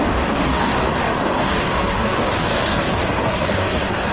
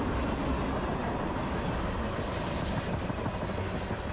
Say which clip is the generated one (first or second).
first